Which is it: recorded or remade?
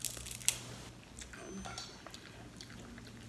recorded